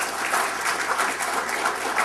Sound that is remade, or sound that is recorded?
recorded